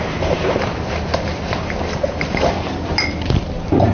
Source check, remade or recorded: recorded